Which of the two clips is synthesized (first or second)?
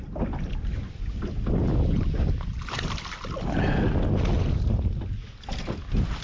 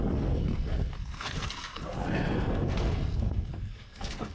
second